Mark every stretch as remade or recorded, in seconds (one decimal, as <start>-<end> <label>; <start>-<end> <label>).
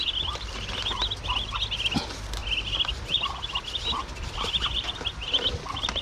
0.0-6.0 recorded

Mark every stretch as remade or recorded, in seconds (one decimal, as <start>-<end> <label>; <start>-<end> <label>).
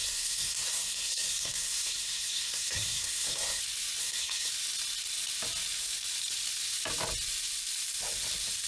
0.0-3.6 remade; 3.6-4.0 recorded; 4.0-4.5 remade; 4.5-8.7 recorded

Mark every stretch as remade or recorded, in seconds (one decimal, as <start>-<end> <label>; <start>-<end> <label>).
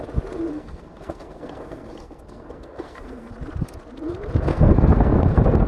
0.0-0.5 recorded; 0.5-3.3 remade; 3.3-4.5 recorded; 4.5-5.7 remade